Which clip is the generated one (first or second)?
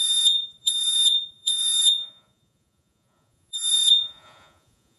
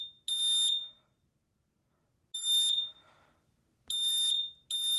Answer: first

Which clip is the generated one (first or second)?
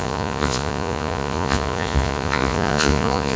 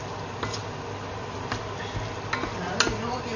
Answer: first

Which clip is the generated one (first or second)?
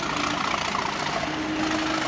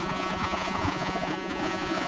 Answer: second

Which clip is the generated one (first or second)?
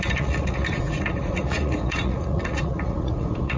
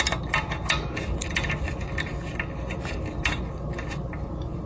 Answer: first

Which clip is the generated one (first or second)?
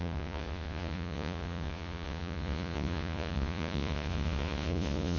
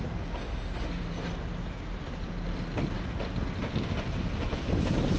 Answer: first